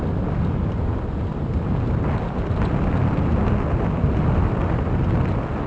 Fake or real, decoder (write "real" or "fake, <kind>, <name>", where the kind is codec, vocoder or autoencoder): real